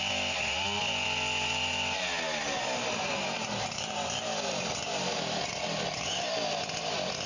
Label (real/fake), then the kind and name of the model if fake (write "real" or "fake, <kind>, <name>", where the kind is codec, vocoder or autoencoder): real